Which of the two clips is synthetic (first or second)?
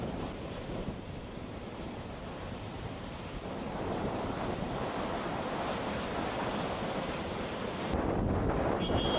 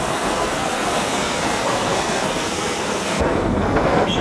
second